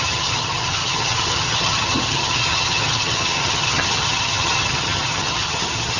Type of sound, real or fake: fake